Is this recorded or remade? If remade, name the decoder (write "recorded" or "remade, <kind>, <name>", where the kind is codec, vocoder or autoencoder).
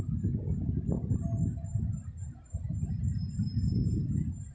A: recorded